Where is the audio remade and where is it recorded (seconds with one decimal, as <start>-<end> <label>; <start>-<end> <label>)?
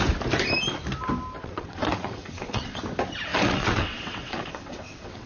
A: 0.0-1.4 recorded; 1.4-2.8 remade; 2.8-3.3 recorded; 3.3-5.3 remade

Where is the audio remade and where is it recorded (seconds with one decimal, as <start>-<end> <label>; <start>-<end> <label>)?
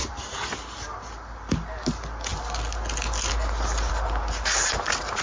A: 0.0-5.2 recorded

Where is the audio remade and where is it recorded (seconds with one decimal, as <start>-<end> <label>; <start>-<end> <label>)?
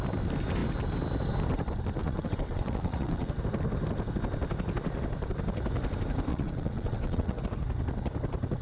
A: 0.0-2.0 recorded; 2.0-3.3 remade; 3.3-6.3 recorded; 6.3-7.4 remade; 7.4-8.6 recorded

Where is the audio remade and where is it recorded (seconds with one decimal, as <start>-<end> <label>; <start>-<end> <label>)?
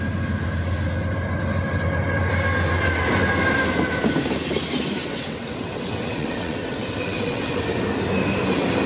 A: 0.0-5.0 recorded; 5.0-7.6 remade; 7.6-8.9 recorded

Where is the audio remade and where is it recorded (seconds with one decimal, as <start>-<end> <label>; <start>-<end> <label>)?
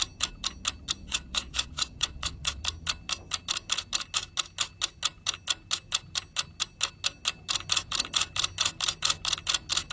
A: 0.0-1.0 recorded; 1.0-2.6 remade; 2.6-9.9 recorded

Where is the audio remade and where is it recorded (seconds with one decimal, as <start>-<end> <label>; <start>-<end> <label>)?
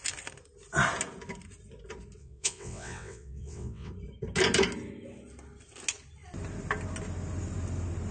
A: 0.0-2.2 recorded; 2.2-3.9 remade; 3.9-8.1 recorded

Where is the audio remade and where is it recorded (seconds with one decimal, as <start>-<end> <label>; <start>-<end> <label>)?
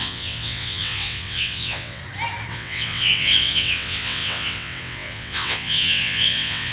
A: 0.0-2.0 remade; 2.0-2.5 recorded; 2.5-6.7 remade